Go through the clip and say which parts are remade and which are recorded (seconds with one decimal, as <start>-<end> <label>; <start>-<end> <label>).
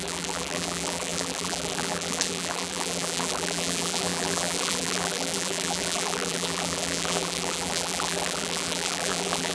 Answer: 0.0-9.5 remade